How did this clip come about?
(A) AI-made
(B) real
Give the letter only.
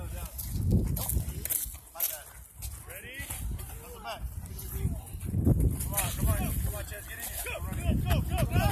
B